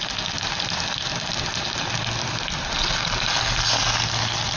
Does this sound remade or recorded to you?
recorded